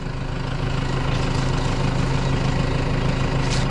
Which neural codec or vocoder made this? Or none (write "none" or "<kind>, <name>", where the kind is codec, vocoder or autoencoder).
none